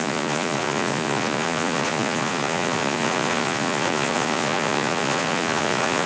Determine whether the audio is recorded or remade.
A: remade